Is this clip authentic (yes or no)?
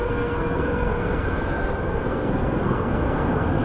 no